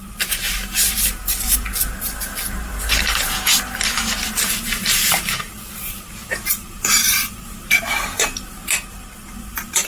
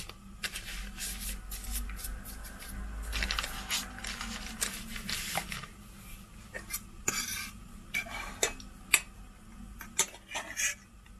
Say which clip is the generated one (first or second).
first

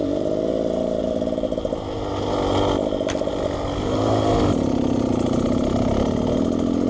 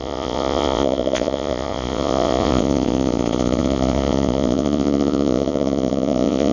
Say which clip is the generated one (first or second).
second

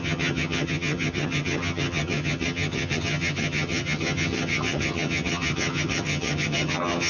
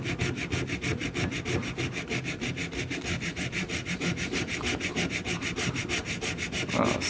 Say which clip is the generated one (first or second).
first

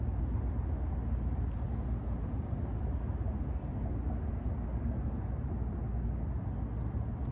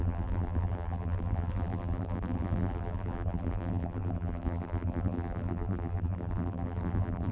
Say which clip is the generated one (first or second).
second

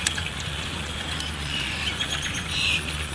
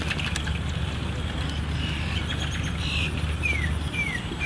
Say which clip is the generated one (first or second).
first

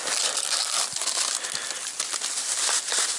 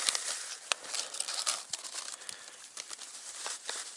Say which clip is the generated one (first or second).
second